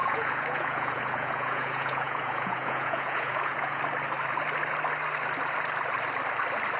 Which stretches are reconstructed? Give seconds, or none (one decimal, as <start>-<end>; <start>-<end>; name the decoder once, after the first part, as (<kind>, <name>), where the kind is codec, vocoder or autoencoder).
0.0-3.8 (vocoder, Vocos)